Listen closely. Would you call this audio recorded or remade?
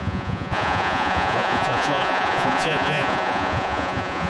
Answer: remade